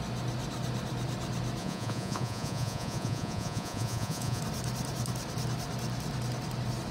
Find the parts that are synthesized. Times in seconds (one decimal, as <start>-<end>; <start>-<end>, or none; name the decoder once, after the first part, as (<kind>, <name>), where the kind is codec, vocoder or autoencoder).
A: 1.6-4.4 (vocoder, Vocos)